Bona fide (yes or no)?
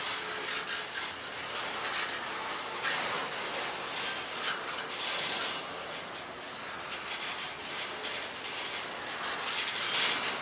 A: yes